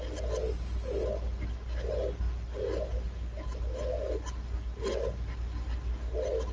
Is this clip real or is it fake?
real